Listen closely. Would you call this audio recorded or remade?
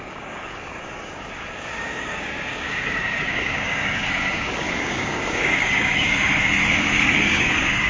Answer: remade